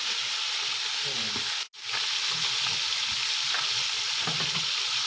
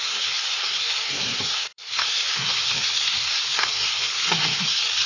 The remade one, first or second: second